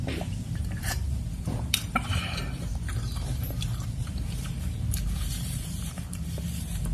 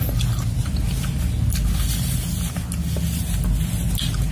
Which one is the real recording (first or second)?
second